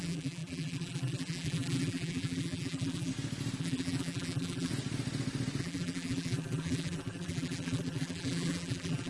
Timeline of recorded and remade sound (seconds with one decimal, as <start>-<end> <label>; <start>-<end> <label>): 0.0-3.1 remade; 3.1-3.6 recorded; 3.6-4.7 remade; 4.7-5.6 recorded; 5.6-9.1 remade